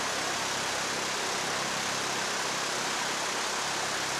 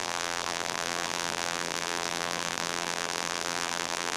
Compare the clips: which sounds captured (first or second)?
first